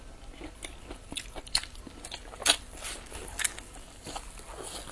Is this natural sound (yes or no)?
yes